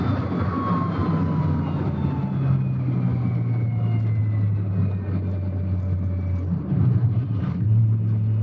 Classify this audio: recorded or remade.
recorded